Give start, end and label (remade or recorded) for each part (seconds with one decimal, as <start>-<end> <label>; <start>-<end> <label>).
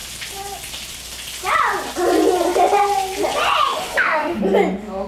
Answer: 0.0-3.7 recorded; 3.7-4.4 remade; 4.4-5.1 recorded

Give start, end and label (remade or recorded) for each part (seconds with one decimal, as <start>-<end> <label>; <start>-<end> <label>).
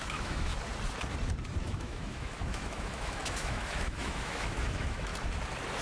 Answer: 0.0-0.5 remade; 0.5-1.6 recorded; 1.6-5.1 remade; 5.1-5.8 recorded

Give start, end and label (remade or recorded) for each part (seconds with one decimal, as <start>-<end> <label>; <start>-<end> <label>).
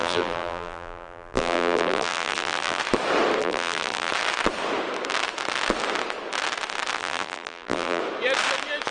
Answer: 0.0-2.8 remade; 2.8-3.4 recorded; 3.4-4.1 remade; 4.1-7.0 recorded; 7.0-8.0 remade; 8.0-8.9 recorded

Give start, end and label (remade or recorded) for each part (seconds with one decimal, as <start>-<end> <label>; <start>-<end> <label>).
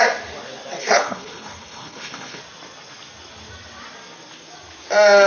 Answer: 0.0-0.8 recorded; 0.8-2.4 remade; 2.4-5.3 recorded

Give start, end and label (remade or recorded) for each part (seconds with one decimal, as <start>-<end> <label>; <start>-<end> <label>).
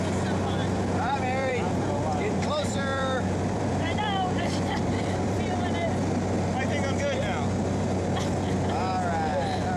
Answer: 0.0-0.6 recorded; 0.6-5.4 remade; 5.4-9.8 recorded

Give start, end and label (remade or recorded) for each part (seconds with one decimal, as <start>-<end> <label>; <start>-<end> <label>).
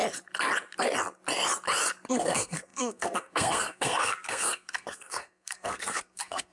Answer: 0.0-2.1 recorded; 2.1-6.5 remade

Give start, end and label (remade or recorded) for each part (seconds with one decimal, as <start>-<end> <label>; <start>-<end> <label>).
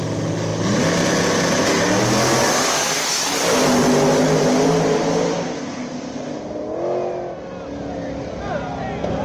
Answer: 0.0-9.2 recorded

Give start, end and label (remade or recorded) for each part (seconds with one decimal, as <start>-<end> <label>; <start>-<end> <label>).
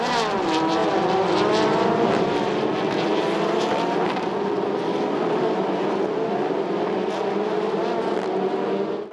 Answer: 0.0-0.8 recorded; 0.8-2.9 remade; 2.9-9.1 recorded